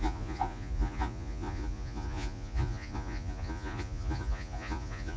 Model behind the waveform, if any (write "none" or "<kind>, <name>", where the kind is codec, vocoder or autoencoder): vocoder, Vocos